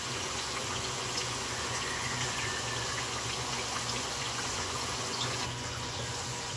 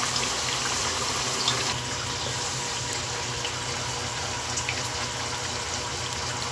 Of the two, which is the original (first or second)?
second